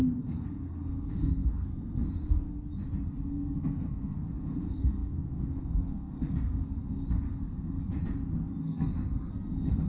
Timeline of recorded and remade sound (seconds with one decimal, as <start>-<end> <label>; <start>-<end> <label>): 0.0-2.7 remade; 2.7-3.3 recorded; 3.3-7.9 remade; 7.9-8.6 recorded; 8.6-9.9 remade

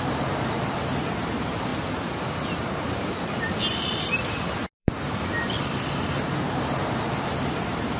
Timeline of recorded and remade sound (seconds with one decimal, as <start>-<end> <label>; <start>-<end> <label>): 0.0-1.7 recorded; 1.7-2.6 remade; 2.6-4.8 recorded; 4.8-5.7 remade; 5.7-8.0 recorded